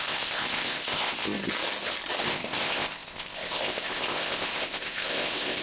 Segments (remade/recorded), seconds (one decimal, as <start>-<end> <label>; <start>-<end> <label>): 0.0-1.4 remade; 1.4-2.2 recorded; 2.2-5.6 remade